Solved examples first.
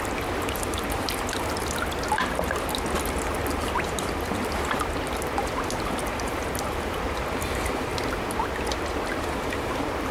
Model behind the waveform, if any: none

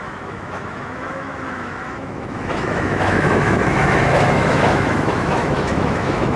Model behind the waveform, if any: autoencoder, DAC-VAE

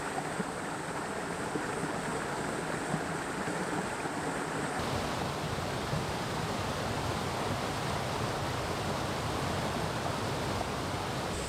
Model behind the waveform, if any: none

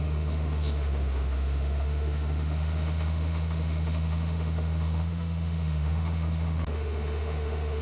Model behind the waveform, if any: autoencoder, DAC-VAE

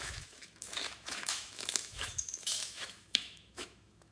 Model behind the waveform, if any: autoencoder, DAC-VAE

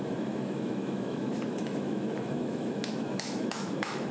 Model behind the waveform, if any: autoencoder, DAC-VAE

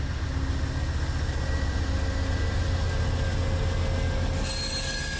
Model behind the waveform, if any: none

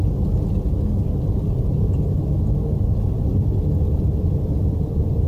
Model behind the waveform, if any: none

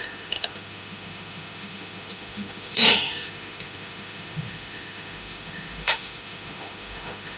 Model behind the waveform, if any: autoencoder, DAC-VAE